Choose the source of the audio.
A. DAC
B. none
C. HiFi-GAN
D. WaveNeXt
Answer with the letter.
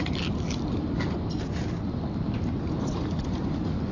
B